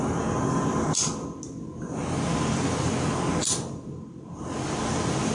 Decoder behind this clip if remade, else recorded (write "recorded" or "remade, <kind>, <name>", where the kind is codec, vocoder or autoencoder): recorded